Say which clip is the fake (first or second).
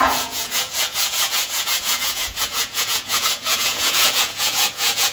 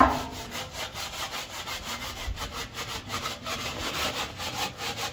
first